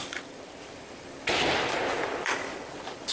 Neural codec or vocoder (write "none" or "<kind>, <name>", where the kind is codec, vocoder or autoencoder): vocoder, BigVGAN v2